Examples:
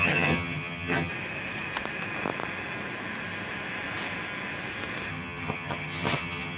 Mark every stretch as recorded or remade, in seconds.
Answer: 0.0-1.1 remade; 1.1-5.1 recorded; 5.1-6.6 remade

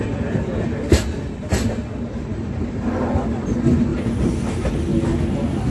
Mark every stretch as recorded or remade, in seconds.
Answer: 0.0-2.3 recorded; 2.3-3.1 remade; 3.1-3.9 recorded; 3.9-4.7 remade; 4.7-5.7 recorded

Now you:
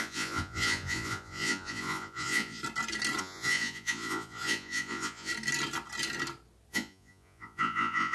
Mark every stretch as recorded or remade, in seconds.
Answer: 0.0-2.6 remade; 2.6-3.2 recorded; 3.2-5.3 remade; 5.3-6.7 recorded; 6.7-8.1 remade

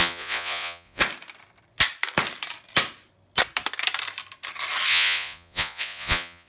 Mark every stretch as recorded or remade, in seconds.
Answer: 0.0-1.0 remade; 1.0-4.9 recorded; 4.9-6.5 remade

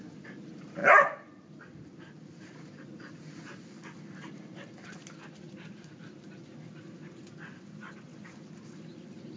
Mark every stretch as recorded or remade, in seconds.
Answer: 0.0-9.4 recorded

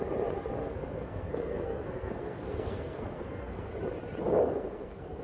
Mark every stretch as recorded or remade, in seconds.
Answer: 0.0-0.6 recorded; 0.6-3.7 remade; 3.7-4.4 recorded; 4.4-5.2 remade